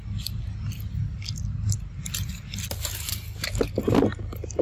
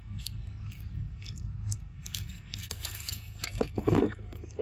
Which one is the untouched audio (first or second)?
first